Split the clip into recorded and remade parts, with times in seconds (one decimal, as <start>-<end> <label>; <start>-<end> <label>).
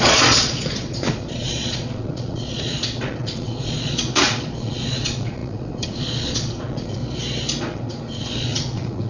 0.0-7.0 remade; 7.0-7.6 recorded; 7.6-9.1 remade